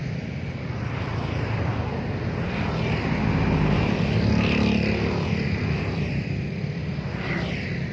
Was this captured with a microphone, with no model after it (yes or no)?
yes